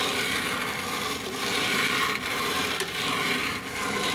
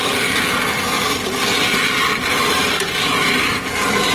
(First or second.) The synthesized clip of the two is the first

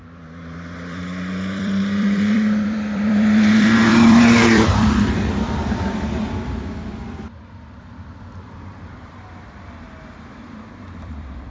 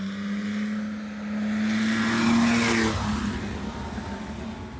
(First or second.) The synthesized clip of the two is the first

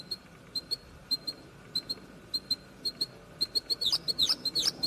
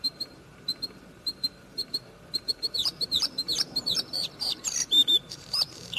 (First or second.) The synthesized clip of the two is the second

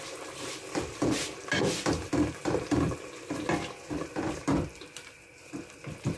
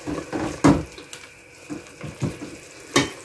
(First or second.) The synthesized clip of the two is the first